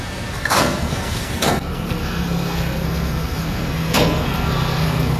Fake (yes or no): yes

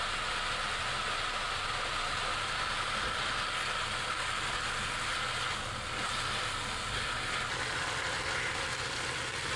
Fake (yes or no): no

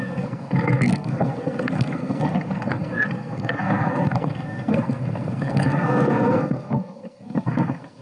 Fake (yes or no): yes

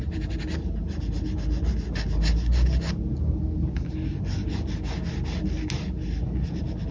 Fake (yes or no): no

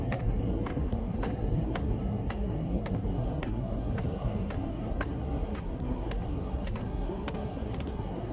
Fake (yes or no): yes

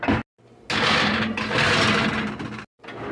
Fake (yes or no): no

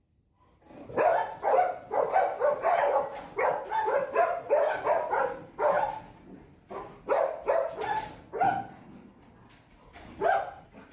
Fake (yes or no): no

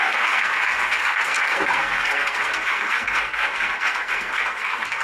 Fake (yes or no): yes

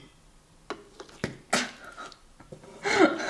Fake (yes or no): no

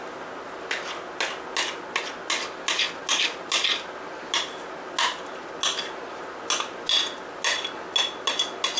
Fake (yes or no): no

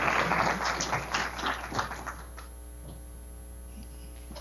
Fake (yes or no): no